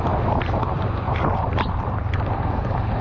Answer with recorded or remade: remade